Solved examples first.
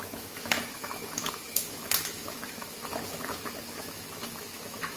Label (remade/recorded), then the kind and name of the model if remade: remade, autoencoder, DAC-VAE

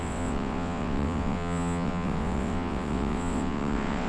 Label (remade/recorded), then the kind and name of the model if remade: remade, vocoder, WaveNeXt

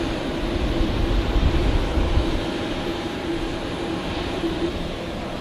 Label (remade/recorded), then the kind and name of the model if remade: remade, vocoder, BigVGAN v2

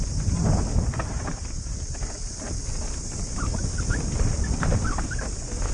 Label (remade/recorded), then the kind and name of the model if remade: recorded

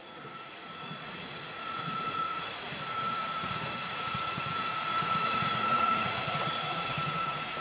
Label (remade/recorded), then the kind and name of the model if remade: remade, vocoder, Vocos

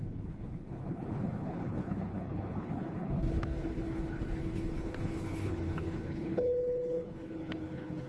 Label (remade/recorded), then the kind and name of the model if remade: remade, codec, HILCodec